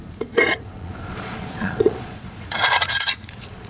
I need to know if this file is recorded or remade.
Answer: remade